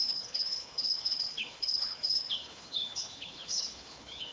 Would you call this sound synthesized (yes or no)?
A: yes